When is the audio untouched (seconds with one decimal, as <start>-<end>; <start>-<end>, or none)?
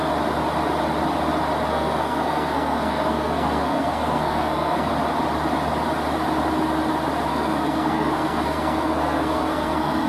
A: 0.0-1.7; 4.9-7.3